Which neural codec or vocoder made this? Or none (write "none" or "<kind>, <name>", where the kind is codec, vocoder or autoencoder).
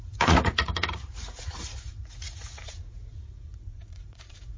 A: vocoder, Vocos